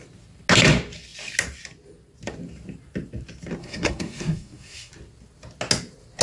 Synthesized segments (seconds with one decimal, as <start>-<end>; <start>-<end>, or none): 3.6-4.9